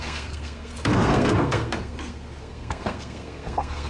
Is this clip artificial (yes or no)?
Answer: yes